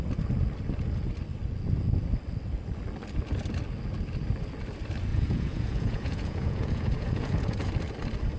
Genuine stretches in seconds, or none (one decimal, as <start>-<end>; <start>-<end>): 0.0-5.1; 7.7-8.4

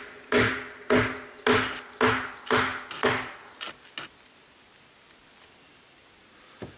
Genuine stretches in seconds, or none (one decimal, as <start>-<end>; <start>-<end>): 0.0-6.8

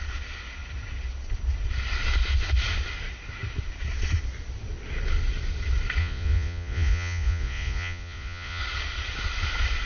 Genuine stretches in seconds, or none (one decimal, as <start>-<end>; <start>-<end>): 0.0-6.0; 8.6-9.9